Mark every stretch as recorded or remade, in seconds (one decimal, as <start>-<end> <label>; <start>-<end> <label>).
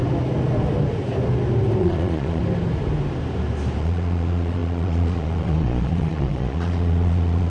0.0-1.8 recorded; 1.8-2.4 remade; 2.4-3.8 recorded; 3.8-7.5 remade